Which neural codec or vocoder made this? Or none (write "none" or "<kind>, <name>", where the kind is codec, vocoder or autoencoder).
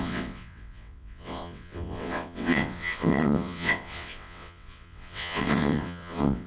vocoder, WaveNeXt